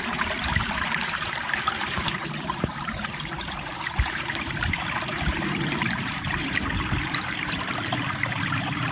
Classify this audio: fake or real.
fake